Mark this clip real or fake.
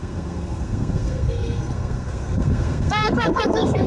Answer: fake